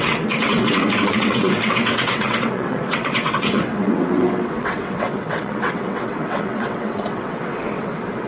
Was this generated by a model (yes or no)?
yes